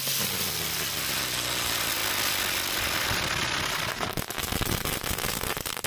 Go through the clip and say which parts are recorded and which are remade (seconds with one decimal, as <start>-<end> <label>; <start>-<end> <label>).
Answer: 0.0-5.9 recorded